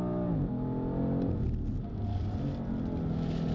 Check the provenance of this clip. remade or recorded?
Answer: recorded